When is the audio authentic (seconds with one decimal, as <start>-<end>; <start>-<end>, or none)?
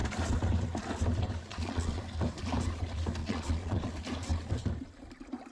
0.0-1.5; 2.0-3.2; 3.9-5.5